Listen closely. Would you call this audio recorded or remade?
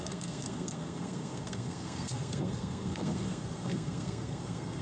remade